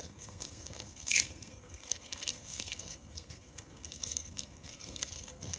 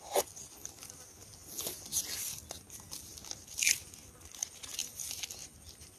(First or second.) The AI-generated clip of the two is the first